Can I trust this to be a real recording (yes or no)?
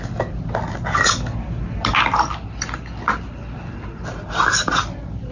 yes